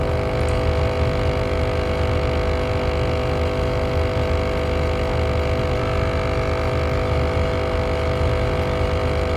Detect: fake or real real